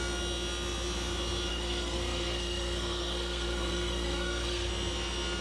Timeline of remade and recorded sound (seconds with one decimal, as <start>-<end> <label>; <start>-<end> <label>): 0.0-1.5 recorded; 1.5-4.7 remade; 4.7-5.4 recorded